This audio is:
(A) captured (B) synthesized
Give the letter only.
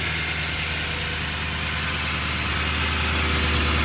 A